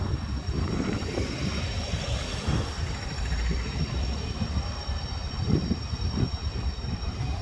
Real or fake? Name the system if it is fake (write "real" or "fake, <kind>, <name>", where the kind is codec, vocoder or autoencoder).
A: fake, vocoder, BigVGAN v2